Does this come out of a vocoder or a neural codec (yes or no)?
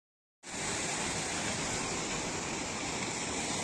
no